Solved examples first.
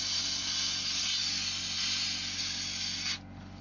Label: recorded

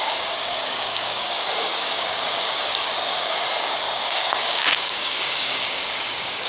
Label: remade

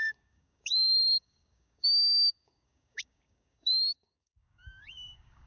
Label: remade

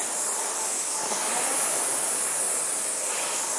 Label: remade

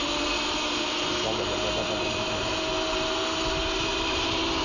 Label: recorded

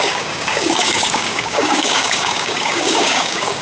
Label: remade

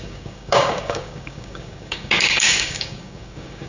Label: remade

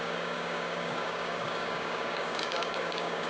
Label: remade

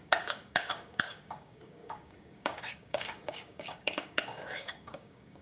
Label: remade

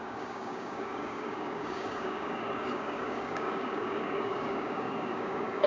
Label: remade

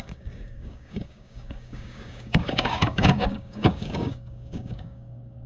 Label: remade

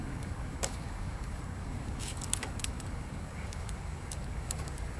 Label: remade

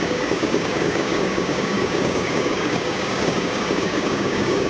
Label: remade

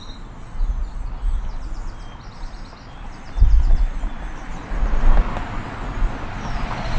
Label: recorded